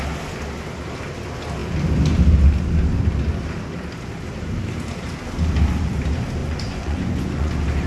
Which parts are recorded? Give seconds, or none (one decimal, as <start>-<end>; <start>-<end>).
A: 0.0-6.4; 7.5-7.9